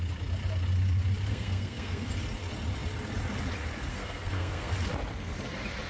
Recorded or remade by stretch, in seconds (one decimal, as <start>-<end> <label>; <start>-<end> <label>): 0.0-1.3 recorded; 1.3-2.1 remade; 2.1-3.9 recorded; 3.9-4.7 remade; 4.7-5.9 recorded